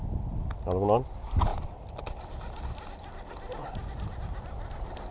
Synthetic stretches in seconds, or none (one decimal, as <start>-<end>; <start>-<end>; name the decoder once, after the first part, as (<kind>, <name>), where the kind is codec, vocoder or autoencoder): none